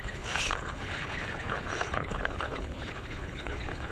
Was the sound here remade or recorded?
remade